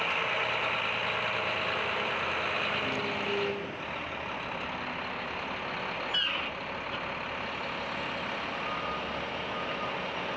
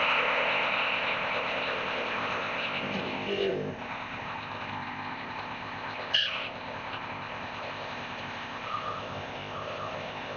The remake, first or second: second